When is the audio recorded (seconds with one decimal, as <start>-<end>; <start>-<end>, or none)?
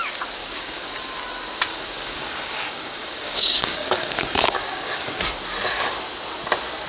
0.0-0.4; 0.9-1.7; 5.2-6.9